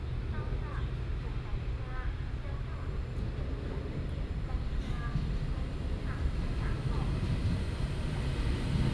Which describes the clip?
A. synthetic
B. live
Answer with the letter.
B